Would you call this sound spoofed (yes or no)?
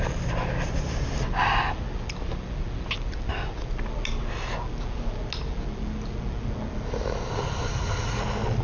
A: no